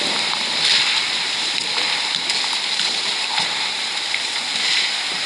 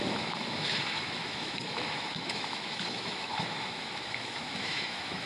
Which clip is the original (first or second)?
first